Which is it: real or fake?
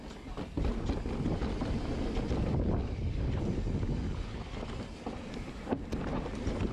real